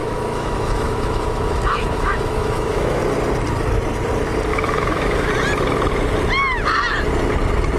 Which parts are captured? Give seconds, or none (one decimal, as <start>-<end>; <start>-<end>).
3.0-4.5; 5.3-7.8